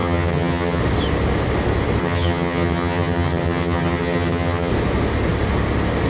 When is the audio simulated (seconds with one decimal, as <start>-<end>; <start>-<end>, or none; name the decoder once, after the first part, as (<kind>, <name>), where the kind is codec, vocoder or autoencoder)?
0.0-0.8 (vocoder, HiFi-GAN); 2.0-4.7